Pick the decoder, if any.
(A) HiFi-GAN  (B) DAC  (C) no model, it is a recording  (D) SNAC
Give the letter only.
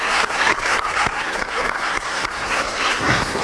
D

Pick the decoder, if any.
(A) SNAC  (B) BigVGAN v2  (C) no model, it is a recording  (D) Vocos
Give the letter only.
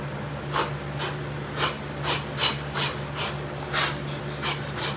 C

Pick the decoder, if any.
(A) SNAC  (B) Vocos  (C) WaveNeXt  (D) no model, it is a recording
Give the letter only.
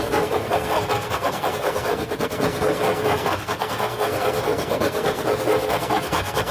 A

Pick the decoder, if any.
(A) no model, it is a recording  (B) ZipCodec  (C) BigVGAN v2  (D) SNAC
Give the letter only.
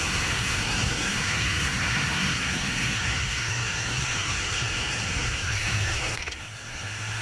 D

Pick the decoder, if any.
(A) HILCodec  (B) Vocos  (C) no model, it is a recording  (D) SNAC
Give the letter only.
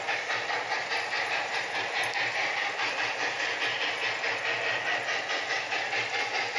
C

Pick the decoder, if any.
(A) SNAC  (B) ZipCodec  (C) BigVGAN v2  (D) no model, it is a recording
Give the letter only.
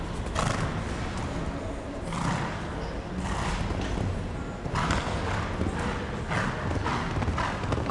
D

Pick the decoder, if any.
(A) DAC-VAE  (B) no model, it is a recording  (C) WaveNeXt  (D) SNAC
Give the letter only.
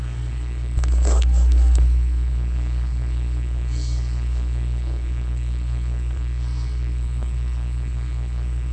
D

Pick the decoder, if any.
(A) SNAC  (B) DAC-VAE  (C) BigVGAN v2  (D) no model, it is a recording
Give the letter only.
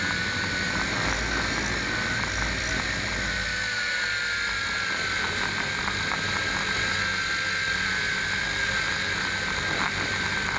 D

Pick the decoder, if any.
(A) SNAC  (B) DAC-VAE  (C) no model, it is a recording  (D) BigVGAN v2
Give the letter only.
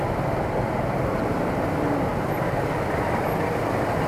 C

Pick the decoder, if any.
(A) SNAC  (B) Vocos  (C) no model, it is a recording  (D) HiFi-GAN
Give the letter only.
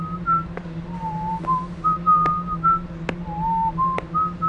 C